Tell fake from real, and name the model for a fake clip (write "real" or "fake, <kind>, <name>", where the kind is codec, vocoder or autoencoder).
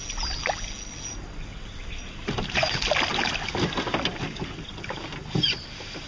real